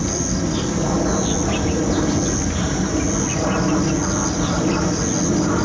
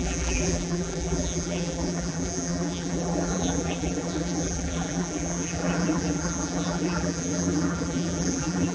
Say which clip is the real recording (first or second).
first